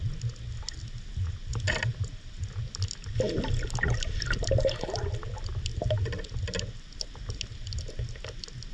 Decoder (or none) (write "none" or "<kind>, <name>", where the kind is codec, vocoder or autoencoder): none